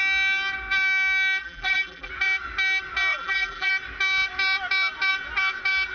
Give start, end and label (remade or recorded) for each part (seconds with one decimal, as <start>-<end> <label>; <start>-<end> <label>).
0.0-1.4 recorded; 1.4-2.1 remade; 2.1-3.1 recorded; 3.1-3.7 remade; 3.7-5.9 recorded